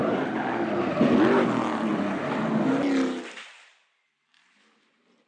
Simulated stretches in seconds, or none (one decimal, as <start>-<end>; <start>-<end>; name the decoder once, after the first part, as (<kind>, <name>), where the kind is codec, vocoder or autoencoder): none